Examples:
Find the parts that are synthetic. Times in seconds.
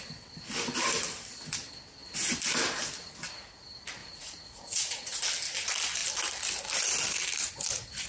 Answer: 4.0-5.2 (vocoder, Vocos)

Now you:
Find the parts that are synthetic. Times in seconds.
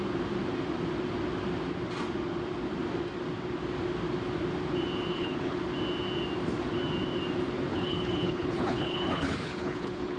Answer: 5.1-5.6 (codec, HILCodec); 7.7-10.2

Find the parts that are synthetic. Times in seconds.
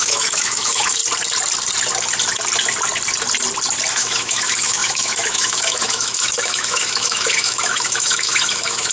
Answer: 0.0-1.0 (autoencoder, DAC-VAE); 3.9-8.9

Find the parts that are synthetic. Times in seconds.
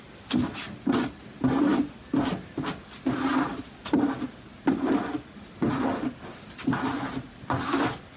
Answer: none